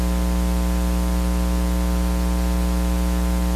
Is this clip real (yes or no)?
yes